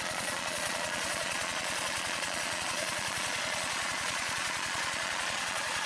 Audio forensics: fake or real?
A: fake